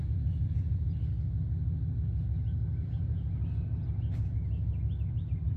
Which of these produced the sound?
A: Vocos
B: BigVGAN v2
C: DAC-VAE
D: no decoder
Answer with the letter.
D